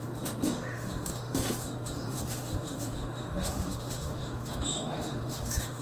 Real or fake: fake